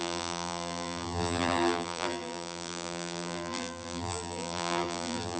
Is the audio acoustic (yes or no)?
no